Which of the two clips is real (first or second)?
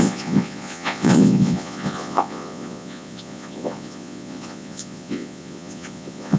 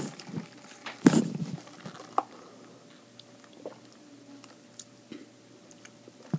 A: second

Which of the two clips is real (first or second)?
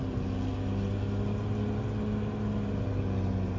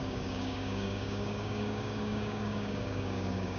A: first